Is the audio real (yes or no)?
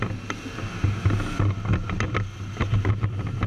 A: yes